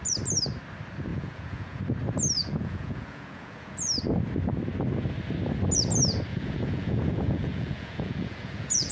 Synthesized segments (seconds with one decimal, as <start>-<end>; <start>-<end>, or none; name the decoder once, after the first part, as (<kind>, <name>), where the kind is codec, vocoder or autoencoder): 1.1-1.8 (vocoder, Vocos); 2.4-3.8; 6.3-8.9